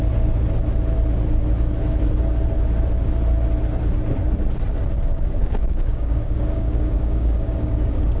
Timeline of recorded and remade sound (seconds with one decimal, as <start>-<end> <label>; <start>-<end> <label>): 0.0-5.1 recorded; 5.1-8.2 remade